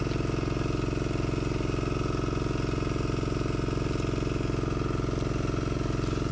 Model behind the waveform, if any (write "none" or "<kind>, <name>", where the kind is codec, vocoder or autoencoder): none